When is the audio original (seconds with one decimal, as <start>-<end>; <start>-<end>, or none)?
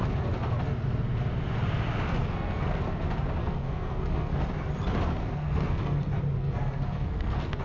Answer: 0.0-2.2; 2.8-3.4; 4.4-5.2; 6.0-6.4